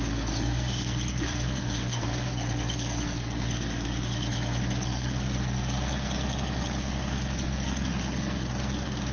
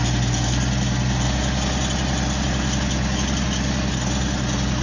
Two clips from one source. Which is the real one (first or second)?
second